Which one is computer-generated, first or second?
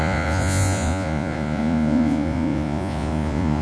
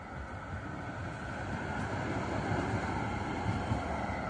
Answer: first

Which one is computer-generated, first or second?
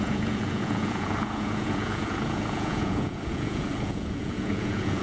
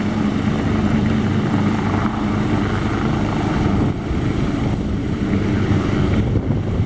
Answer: first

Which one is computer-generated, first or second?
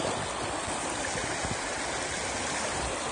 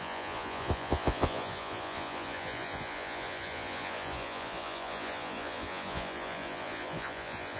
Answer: second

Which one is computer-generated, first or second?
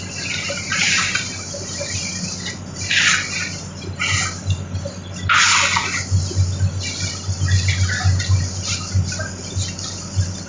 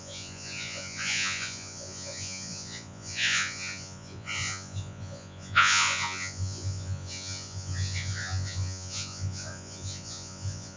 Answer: second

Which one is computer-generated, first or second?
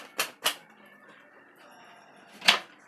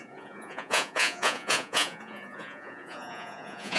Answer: second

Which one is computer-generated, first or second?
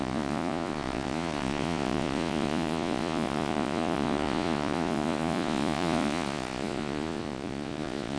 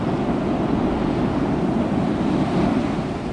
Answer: first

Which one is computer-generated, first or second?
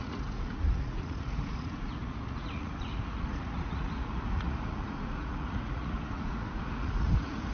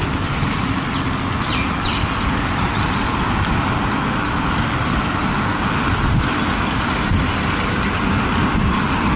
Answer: first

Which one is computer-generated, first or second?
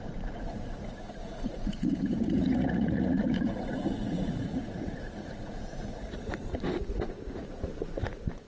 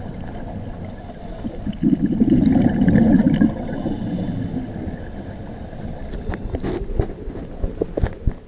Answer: first